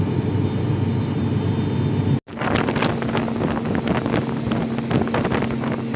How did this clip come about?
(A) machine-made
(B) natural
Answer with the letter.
B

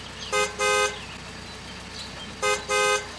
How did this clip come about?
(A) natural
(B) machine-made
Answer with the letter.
A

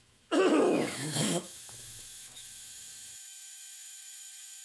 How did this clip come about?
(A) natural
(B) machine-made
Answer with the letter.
B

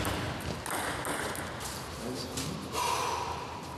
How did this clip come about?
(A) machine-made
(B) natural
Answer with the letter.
B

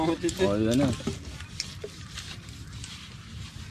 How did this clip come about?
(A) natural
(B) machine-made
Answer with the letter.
A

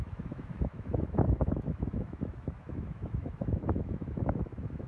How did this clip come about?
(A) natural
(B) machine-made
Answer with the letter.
B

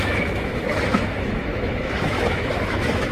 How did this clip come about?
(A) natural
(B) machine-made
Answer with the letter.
B